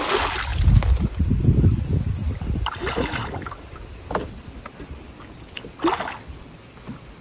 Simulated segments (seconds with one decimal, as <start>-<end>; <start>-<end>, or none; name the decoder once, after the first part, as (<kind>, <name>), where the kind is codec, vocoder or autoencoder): none